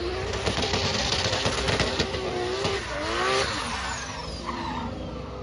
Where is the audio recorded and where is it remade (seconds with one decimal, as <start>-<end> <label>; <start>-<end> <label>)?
0.0-5.4 recorded